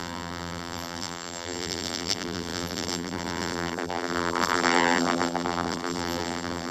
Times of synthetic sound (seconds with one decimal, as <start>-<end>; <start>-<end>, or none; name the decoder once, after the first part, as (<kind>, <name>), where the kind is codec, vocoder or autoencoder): 0.0-6.7 (vocoder, BigVGAN v2)